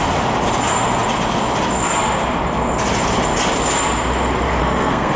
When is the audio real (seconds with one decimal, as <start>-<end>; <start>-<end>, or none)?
0.0-4.6